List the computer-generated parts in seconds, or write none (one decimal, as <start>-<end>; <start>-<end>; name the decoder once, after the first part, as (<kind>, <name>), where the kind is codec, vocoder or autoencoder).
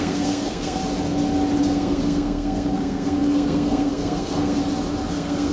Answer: 0.0-0.8 (codec, SNAC); 1.6-4.6; 5.1-5.5